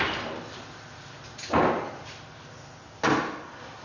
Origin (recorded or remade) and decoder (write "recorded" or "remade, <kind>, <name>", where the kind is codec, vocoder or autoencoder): recorded